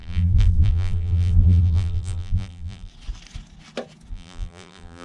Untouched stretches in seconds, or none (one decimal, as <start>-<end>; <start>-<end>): 2.9-4.1